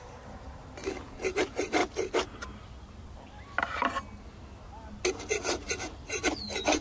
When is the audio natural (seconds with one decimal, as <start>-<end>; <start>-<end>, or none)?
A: 1.8-5.1